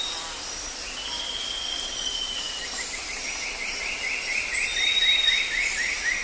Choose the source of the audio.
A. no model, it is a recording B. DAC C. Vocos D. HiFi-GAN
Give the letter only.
A